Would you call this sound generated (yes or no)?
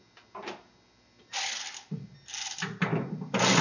no